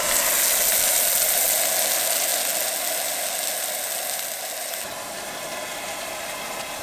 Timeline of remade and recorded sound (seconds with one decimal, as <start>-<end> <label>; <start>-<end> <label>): 0.0-6.8 recorded